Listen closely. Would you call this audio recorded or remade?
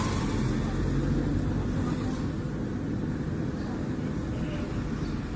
recorded